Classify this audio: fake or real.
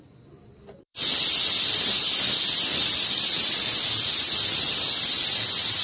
fake